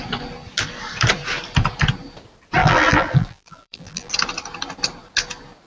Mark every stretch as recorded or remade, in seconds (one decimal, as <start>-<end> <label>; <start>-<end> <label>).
0.0-2.6 recorded; 2.6-4.1 remade; 4.1-5.7 recorded